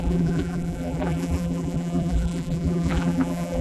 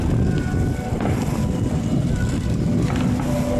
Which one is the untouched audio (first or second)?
second